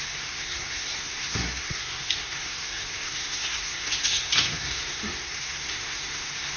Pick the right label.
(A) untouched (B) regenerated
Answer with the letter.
B